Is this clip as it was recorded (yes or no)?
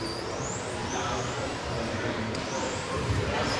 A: yes